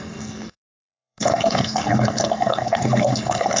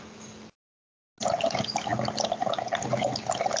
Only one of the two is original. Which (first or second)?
second